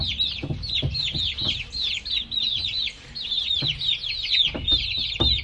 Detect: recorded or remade recorded